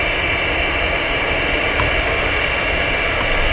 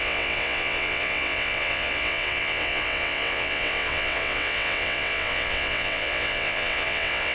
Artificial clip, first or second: second